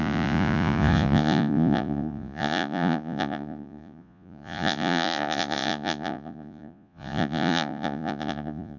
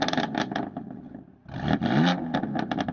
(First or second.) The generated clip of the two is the first